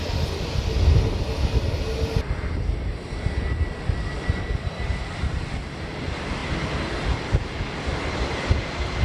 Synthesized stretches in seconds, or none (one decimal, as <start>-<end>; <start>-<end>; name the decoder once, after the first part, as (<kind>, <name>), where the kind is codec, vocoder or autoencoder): none